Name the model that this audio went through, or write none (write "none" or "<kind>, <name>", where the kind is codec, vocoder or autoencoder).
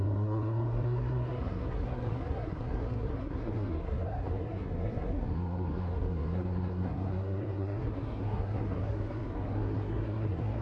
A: codec, SNAC